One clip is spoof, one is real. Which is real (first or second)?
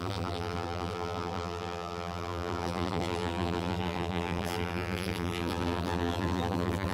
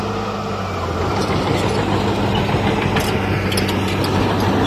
second